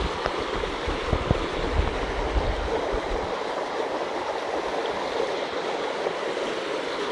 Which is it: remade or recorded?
recorded